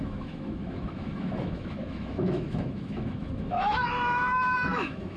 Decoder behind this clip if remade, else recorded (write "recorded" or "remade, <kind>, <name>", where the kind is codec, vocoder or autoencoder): remade, autoencoder, DAC-VAE